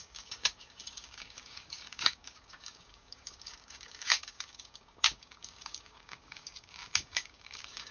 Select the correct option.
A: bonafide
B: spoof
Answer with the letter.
B